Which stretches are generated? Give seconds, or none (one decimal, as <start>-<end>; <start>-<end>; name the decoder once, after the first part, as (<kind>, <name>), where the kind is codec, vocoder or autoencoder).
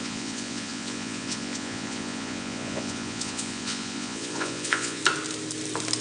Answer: 0.0-5.0 (vocoder, Vocos)